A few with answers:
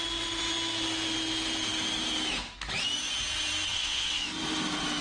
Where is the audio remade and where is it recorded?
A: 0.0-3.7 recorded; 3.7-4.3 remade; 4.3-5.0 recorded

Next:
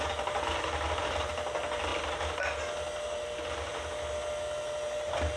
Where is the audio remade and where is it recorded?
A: 0.0-5.4 recorded